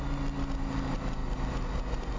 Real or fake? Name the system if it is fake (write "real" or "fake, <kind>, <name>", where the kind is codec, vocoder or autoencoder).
real